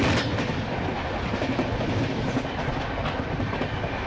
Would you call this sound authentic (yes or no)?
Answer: yes